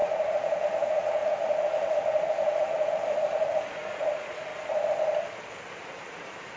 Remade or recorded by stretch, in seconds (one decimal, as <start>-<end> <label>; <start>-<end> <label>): 0.0-4.5 remade; 4.5-6.1 recorded; 6.1-6.6 remade